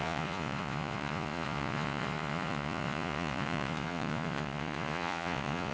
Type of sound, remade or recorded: remade